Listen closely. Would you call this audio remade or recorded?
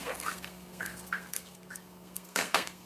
remade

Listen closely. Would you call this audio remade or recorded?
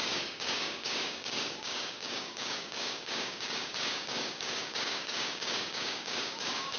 remade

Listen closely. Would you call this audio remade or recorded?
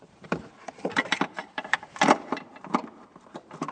remade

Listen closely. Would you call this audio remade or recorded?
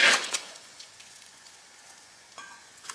remade